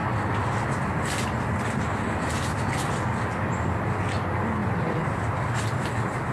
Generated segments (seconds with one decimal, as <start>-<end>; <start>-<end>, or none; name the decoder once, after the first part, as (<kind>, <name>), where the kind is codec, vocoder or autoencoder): none